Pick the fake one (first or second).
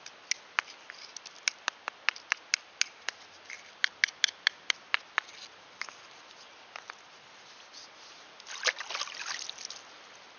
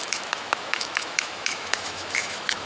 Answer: second